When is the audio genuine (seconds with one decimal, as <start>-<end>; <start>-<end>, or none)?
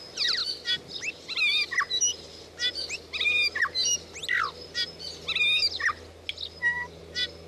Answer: 0.0-7.5